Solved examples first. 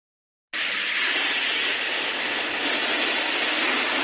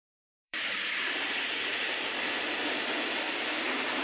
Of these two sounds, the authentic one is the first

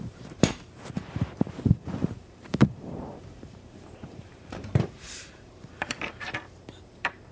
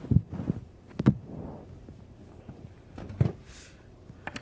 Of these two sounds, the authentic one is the second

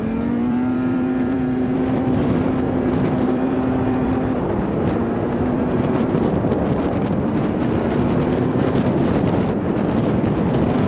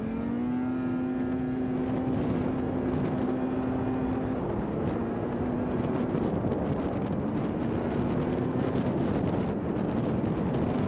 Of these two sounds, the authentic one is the second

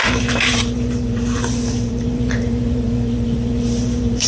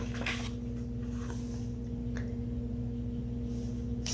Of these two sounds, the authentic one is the second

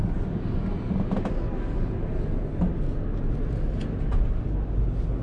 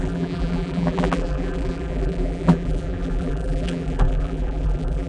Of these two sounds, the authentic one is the first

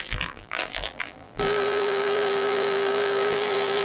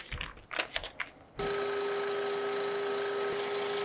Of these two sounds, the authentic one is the second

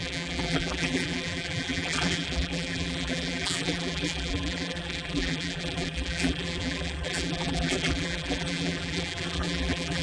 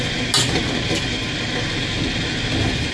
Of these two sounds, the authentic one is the second